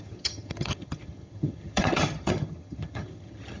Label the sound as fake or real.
fake